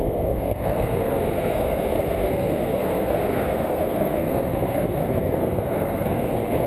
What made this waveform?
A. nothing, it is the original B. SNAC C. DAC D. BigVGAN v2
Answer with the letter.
B